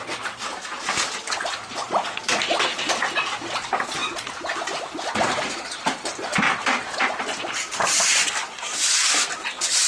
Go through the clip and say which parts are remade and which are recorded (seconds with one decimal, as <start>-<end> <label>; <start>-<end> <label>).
0.0-9.9 recorded